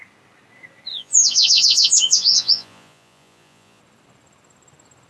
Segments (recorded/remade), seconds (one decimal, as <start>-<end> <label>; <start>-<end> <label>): 0.0-0.9 recorded; 0.9-3.8 remade; 3.8-5.1 recorded

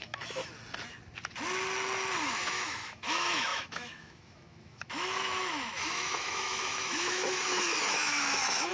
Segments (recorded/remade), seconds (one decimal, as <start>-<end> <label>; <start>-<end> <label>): 0.0-0.4 remade; 0.4-2.3 recorded; 2.3-8.7 remade